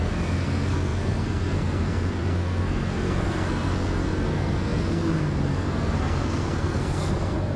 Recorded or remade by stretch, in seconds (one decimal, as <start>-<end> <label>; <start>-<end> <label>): 0.0-7.6 remade